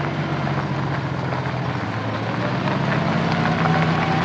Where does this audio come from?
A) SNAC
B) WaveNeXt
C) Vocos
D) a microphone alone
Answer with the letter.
D